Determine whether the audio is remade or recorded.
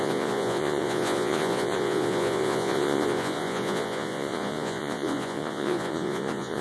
remade